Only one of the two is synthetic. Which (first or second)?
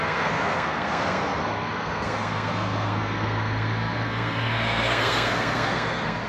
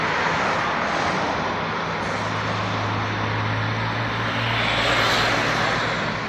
first